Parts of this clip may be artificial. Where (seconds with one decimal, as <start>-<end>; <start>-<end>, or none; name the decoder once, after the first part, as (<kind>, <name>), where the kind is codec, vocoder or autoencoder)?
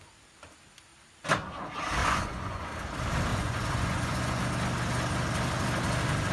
2.0-2.7 (vocoder, Vocos); 3.3-4.4